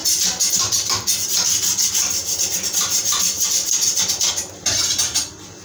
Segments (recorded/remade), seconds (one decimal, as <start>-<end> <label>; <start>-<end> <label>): 0.0-5.6 recorded